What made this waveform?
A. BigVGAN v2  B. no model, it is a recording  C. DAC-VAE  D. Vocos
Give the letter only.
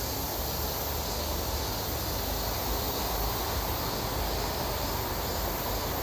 B